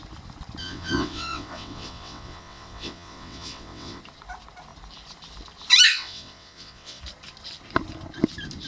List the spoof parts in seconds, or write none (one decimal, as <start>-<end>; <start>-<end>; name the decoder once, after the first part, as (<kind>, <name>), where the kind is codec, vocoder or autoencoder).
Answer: 0.6-4.0 (vocoder, WaveNeXt); 5.9-7.0